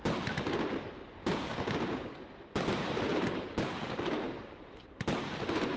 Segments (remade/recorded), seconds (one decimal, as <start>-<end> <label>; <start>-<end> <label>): 0.0-1.2 recorded; 1.2-2.2 remade; 2.2-3.1 recorded; 3.1-4.6 remade; 4.6-5.8 recorded

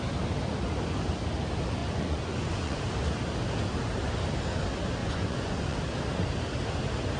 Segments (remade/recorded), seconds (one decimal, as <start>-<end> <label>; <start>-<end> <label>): 0.0-1.8 recorded; 1.8-2.8 remade; 2.8-5.0 recorded; 5.0-5.8 remade; 5.8-7.2 recorded

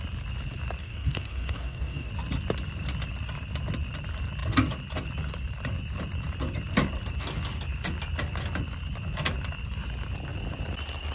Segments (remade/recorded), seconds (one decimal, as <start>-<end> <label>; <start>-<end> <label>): 0.0-0.8 recorded; 0.8-2.1 remade; 2.1-11.1 recorded

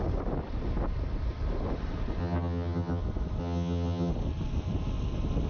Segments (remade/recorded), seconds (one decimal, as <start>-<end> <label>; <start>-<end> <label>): 0.0-2.2 recorded; 2.2-3.0 remade; 3.0-3.4 recorded; 3.4-4.1 remade; 4.1-5.5 recorded

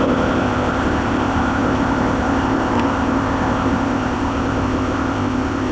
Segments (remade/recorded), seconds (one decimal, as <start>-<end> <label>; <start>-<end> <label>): 0.0-5.7 remade